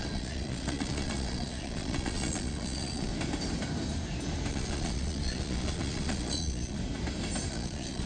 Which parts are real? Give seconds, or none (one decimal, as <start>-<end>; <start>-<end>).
3.1-4.5; 6.8-7.5